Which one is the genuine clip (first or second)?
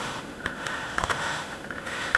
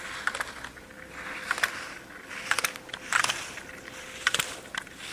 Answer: second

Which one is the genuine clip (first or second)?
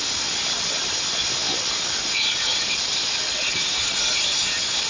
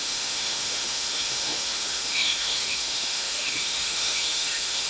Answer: first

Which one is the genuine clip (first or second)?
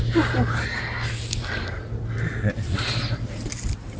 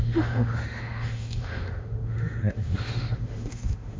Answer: first